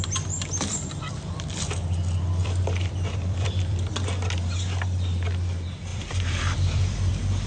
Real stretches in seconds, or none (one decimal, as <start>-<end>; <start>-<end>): 0.0-2.4; 3.9-5.9; 7.1-7.5